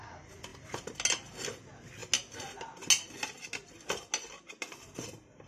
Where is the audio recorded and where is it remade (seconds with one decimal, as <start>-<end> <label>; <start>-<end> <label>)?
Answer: 0.0-5.5 recorded